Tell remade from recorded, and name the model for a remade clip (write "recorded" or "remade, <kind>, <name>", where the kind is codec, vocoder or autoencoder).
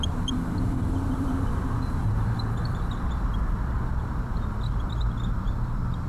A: remade, vocoder, BigVGAN v2